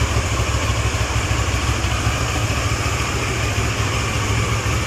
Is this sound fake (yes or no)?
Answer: no